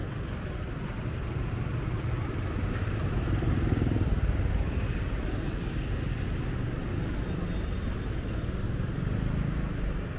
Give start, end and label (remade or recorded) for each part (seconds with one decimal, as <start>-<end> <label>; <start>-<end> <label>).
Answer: 0.0-10.2 recorded